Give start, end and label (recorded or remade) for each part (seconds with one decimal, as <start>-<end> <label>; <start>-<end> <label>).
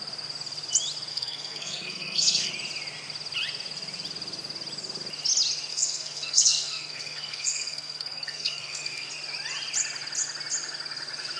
0.0-1.1 recorded; 1.1-2.5 remade; 2.5-5.7 recorded; 5.7-9.1 remade; 9.1-11.4 recorded